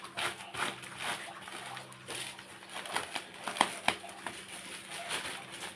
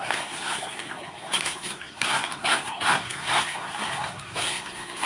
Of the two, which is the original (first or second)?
first